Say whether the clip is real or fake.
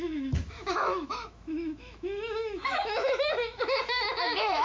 fake